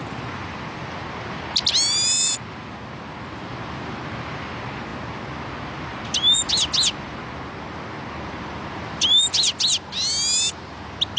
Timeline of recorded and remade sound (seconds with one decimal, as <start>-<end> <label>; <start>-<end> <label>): 0.0-11.2 recorded